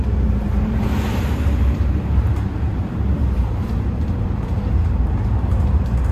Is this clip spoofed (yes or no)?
yes